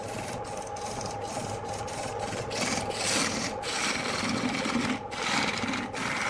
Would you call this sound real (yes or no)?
yes